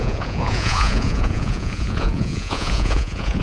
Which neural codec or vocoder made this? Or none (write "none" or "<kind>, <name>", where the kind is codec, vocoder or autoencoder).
vocoder, Vocos